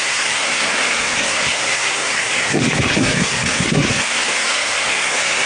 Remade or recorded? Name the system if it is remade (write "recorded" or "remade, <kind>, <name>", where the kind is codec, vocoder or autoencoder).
remade, codec, SNAC